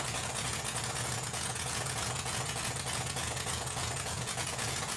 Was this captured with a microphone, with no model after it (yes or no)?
no